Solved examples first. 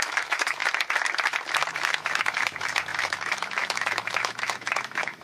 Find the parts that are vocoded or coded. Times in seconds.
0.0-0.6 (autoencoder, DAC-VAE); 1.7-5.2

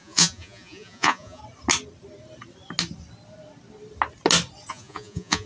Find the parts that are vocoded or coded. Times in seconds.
0.0-1.4 (vocoder, Vocos); 4.7-5.5

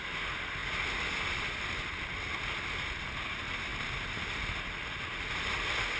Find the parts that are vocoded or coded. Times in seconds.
none

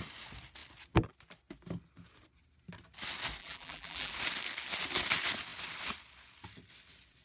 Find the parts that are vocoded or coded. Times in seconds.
3.4-4.1 (vocoder, BigVGAN v2)